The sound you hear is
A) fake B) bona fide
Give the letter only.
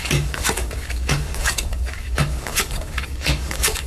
A